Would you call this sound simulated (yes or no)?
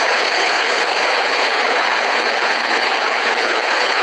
yes